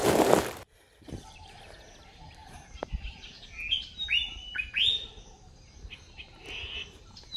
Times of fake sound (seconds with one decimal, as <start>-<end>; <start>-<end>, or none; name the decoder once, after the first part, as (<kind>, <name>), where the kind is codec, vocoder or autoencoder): 0.0-1.3 (vocoder, BigVGAN v2)